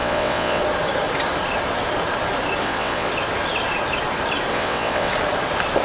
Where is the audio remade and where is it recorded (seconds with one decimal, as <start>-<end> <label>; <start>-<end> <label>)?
0.0-0.6 remade; 0.6-2.6 recorded; 2.6-3.1 remade; 3.1-4.5 recorded; 4.5-5.1 remade; 5.1-5.8 recorded